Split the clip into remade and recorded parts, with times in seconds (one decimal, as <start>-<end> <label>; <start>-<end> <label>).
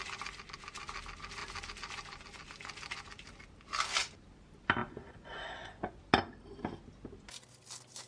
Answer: 0.0-4.8 recorded; 4.8-6.0 remade; 6.0-8.1 recorded